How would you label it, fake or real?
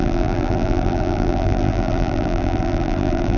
fake